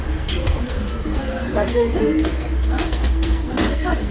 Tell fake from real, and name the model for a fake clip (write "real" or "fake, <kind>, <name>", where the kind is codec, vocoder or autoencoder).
fake, codec, SNAC